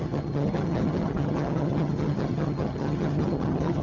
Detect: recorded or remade remade